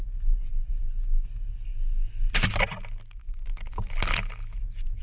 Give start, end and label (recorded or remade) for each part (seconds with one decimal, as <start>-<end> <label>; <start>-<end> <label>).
0.0-3.2 recorded; 3.2-3.9 remade; 3.9-5.0 recorded

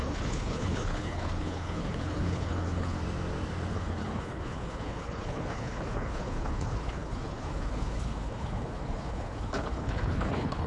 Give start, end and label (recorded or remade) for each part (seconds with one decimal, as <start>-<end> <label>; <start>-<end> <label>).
0.0-3.0 remade; 3.0-3.7 recorded; 3.7-10.7 remade